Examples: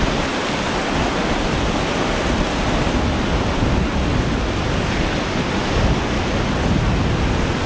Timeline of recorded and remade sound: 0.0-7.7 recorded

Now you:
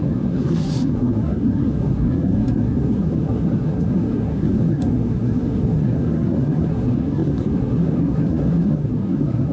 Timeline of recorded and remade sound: 0.0-9.5 remade

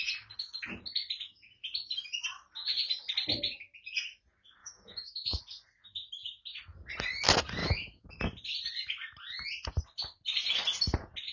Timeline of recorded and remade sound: 0.0-4.6 recorded; 4.6-5.4 remade; 5.4-7.6 recorded; 7.6-8.2 remade; 8.2-11.3 recorded

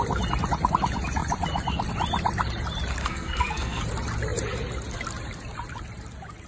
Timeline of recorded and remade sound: 0.0-3.0 recorded; 3.0-3.8 remade; 3.8-6.5 recorded